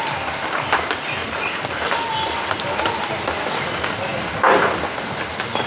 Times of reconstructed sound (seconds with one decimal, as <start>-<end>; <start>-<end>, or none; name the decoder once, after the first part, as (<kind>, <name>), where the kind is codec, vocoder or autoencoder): none